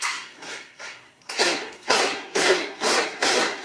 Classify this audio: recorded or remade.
remade